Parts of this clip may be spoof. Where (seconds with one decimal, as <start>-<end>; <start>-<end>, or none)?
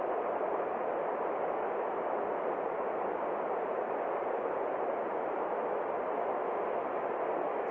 0.7-1.6